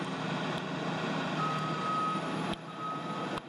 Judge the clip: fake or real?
real